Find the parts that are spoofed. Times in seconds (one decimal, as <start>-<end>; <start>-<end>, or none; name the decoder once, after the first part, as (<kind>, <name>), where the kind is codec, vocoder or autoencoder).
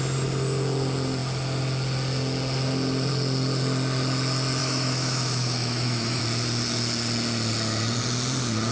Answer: 4.6-6.2 (autoencoder, DAC-VAE)